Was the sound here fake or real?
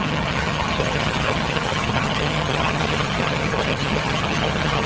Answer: fake